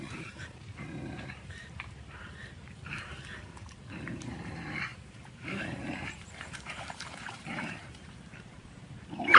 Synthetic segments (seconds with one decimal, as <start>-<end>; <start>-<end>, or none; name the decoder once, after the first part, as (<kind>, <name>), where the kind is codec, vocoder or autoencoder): 0.0-2.4 (vocoder, BigVGAN v2); 2.9-9.4